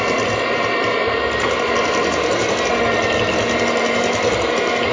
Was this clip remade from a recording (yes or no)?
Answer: no